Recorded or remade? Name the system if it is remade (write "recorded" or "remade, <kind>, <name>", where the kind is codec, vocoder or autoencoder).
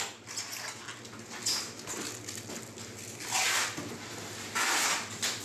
recorded